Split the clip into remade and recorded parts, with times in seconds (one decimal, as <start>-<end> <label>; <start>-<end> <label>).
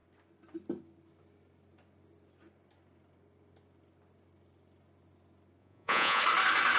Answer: 0.0-5.6 recorded; 5.6-6.2 remade; 6.2-6.8 recorded